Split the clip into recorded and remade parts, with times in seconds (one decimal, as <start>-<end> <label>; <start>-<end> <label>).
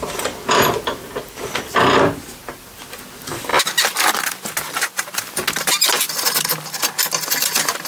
0.0-7.9 recorded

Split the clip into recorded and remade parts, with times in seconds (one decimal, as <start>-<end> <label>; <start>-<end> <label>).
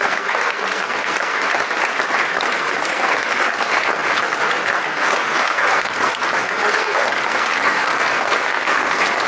0.0-1.5 remade; 1.5-2.3 recorded; 2.3-9.3 remade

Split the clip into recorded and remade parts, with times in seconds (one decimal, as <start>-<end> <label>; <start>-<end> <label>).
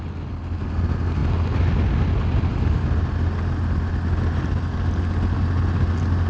0.0-6.3 recorded